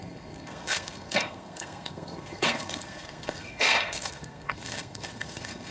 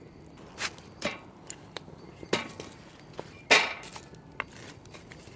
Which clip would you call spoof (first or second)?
first